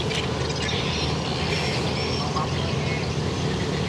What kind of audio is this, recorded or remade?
recorded